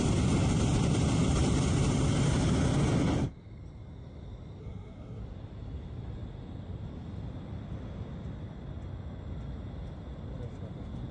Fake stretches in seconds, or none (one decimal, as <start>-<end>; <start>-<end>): 4.6-5.2